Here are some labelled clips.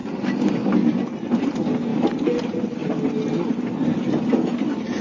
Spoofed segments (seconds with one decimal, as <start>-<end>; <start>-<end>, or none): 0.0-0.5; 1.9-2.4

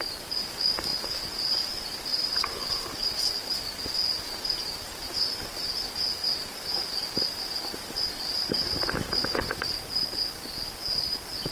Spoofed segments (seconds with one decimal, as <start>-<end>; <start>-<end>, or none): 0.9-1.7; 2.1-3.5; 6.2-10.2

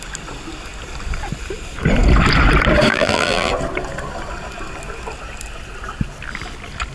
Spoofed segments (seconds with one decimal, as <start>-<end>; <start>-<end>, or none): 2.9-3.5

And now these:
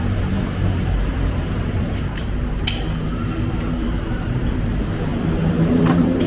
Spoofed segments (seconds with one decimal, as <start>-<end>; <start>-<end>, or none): 0.0-6.3

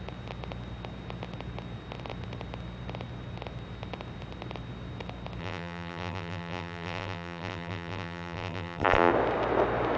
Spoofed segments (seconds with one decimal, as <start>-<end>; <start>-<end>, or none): 5.4-9.1

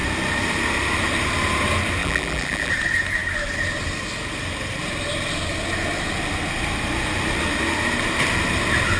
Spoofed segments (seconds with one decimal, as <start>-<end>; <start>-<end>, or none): 2.0-2.7